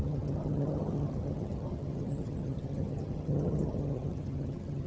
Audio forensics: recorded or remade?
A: remade